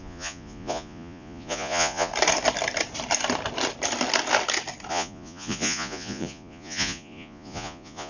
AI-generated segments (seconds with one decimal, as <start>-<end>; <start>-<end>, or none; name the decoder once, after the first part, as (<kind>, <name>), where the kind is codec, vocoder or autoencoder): 0.0-2.1 (vocoder, Vocos); 4.9-8.1